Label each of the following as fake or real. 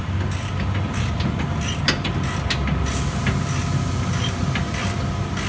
real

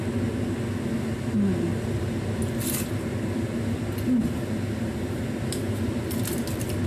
real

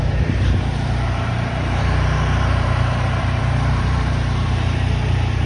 fake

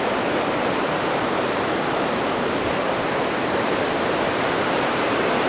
fake